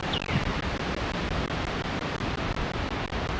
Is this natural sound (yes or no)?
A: yes